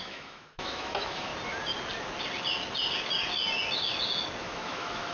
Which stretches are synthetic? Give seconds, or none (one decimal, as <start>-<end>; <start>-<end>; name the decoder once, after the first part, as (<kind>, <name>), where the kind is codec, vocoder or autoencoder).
0.0-1.3 (autoencoder, DAC-VAE); 4.4-5.1

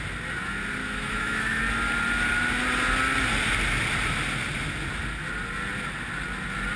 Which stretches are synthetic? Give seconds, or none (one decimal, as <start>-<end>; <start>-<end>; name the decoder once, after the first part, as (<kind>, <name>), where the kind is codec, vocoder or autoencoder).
0.8-1.6 (autoencoder, DAC-VAE)

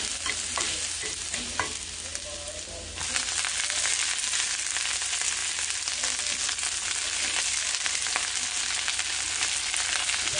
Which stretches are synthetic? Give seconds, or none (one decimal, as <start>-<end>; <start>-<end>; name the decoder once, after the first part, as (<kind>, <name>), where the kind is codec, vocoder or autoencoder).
none

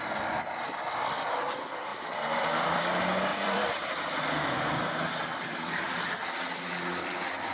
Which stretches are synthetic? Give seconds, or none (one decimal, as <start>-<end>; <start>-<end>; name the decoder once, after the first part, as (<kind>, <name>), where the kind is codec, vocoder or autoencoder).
1.9-2.8 (vocoder, BigVGAN v2); 3.3-6.1